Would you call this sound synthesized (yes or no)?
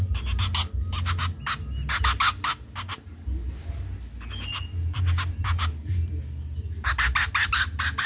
no